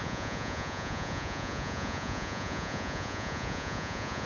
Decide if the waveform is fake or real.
fake